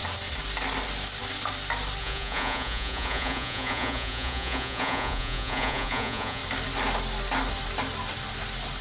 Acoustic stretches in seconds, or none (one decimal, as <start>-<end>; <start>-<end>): 0.0-2.0; 6.4-8.8